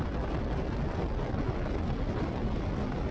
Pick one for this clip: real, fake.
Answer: real